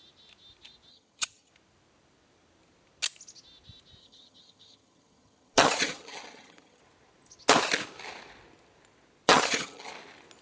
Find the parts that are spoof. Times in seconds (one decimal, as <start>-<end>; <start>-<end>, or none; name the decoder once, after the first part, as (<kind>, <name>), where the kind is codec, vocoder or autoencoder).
0.9-1.5 (vocoder, HiFi-GAN); 4.0-6.8; 9.3-9.9